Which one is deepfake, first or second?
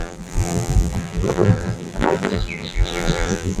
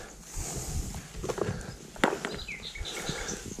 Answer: first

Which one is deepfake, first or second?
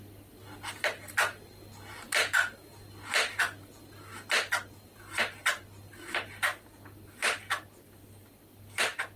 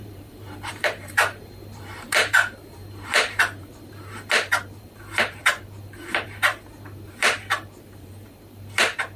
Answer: second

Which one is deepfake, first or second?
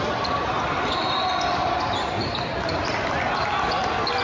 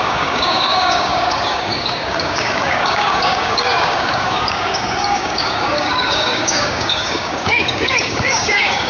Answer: second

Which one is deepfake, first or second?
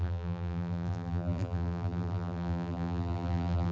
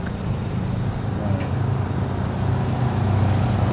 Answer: first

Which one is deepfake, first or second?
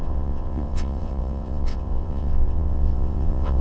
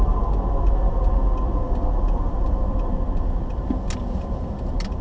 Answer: first